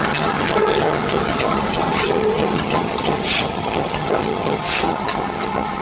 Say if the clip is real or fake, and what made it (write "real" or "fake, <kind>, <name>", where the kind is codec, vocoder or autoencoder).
fake, vocoder, HiFi-GAN